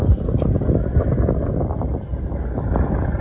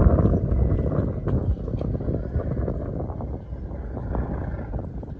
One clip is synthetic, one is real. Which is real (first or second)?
second